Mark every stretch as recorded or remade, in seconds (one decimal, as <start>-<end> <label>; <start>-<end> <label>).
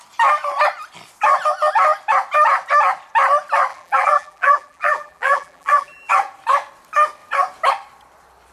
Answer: 0.0-3.7 recorded; 3.7-6.1 remade; 6.1-8.5 recorded